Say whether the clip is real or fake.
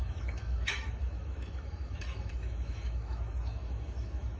fake